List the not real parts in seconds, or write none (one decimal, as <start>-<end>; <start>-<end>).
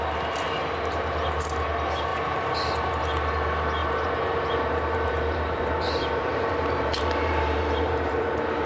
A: 2.1-2.9; 3.8-8.7